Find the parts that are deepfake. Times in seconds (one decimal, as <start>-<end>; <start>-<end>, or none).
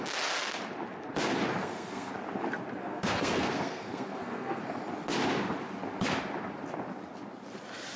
1.6-2.1; 2.8-4.6